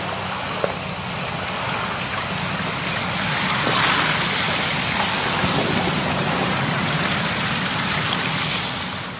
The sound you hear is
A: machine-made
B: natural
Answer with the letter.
B